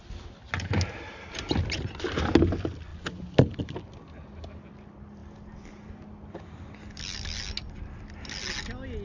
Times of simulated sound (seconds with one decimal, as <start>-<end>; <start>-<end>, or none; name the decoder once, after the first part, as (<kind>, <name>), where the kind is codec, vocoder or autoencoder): none